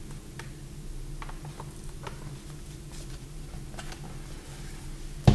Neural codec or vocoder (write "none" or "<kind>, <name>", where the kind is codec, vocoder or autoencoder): none